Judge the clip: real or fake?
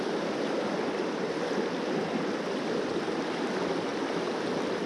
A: real